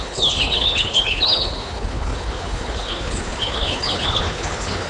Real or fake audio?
fake